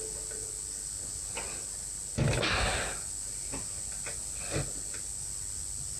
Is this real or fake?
real